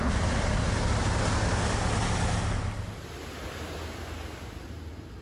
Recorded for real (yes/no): yes